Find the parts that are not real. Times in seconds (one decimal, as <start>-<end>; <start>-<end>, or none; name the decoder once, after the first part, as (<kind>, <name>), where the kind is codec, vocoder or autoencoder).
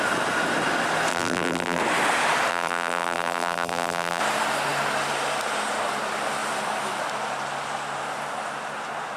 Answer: 1.1-1.8 (vocoder, BigVGAN v2); 2.5-4.2